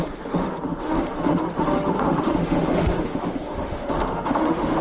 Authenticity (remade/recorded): remade